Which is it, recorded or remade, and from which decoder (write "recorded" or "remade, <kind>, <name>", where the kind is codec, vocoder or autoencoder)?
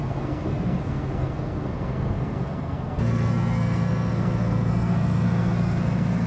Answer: remade, codec, SNAC